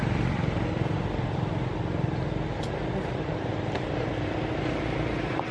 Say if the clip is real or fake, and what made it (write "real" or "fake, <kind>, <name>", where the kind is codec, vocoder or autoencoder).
real